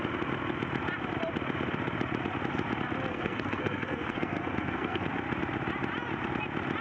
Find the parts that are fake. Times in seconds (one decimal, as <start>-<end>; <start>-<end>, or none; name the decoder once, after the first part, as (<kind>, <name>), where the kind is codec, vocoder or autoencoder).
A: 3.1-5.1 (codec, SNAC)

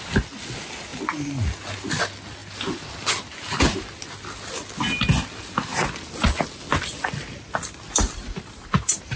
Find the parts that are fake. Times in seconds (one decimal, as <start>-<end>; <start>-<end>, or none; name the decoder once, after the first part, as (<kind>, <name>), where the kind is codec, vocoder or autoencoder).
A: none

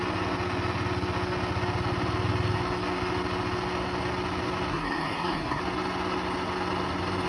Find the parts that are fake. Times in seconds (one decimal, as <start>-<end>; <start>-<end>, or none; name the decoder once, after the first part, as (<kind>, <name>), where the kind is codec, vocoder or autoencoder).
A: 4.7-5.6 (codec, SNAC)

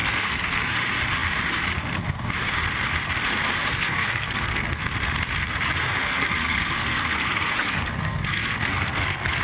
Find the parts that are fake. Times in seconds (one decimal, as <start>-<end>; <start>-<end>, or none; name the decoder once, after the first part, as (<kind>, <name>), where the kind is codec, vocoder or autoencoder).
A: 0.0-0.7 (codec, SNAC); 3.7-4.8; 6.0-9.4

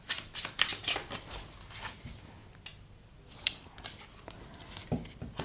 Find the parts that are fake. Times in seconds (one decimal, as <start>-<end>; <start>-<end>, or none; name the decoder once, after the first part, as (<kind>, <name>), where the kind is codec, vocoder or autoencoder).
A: none

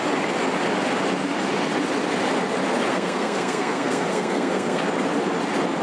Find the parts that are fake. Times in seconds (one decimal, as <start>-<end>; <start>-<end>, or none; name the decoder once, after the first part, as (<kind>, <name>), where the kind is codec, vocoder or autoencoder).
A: 2.9-4.8 (codec, SNAC)

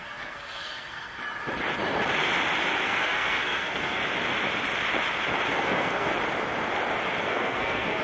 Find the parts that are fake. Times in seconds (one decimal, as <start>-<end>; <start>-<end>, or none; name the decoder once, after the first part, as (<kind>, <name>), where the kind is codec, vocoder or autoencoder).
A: 0.0-1.2 (codec, SNAC); 2.8-4.0; 5.5-6.1; 7.2-8.0